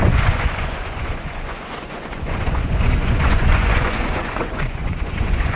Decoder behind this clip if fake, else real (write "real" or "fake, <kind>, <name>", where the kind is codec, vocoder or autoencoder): fake, vocoder, Vocos